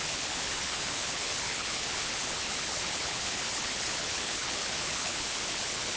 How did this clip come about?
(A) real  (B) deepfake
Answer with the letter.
B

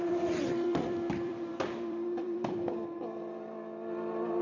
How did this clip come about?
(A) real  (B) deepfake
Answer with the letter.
B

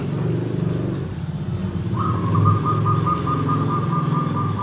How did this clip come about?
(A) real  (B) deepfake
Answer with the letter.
A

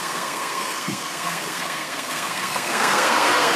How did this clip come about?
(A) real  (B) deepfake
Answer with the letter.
B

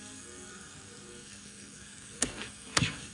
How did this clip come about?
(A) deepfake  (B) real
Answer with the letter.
A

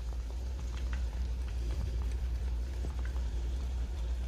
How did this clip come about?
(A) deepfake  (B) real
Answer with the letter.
A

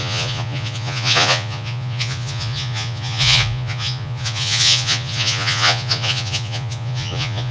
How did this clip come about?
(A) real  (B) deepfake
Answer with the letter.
B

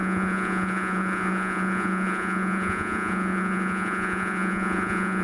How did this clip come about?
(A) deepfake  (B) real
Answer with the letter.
A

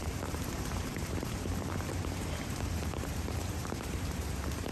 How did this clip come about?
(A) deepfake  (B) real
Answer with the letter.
A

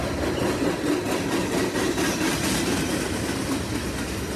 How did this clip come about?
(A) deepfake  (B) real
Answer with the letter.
B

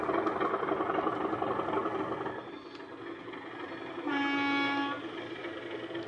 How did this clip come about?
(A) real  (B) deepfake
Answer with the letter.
A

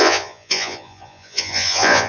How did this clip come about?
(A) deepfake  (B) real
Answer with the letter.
A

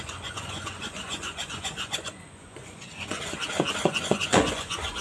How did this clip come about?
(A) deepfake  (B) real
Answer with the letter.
A